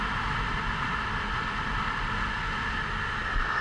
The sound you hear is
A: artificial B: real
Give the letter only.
B